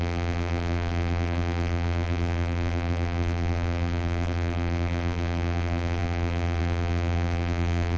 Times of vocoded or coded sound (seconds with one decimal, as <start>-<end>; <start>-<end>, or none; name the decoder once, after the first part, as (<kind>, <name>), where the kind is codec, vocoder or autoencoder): 0.0-8.0 (vocoder, BigVGAN v2)